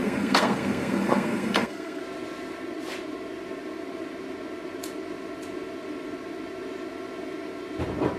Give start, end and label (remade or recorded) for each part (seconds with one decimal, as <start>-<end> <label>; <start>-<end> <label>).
0.0-2.0 remade; 2.0-8.2 recorded